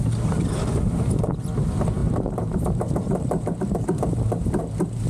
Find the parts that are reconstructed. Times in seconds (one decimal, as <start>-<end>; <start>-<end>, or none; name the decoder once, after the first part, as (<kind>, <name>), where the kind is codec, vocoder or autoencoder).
2.0-4.6 (vocoder, BigVGAN v2)